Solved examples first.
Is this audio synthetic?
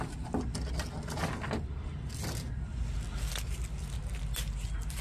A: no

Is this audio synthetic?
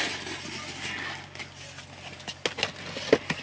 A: no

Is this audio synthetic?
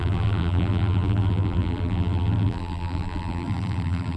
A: yes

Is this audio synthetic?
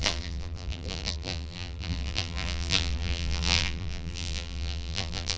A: yes